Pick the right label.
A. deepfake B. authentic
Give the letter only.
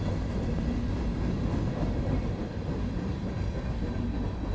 B